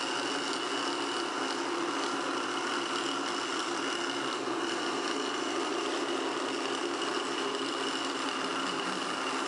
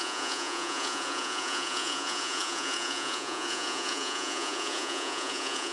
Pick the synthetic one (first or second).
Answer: second